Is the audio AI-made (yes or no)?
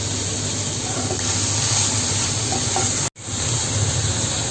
no